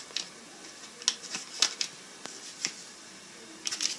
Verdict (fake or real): real